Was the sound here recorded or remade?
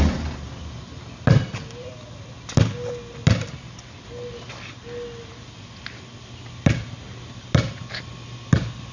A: recorded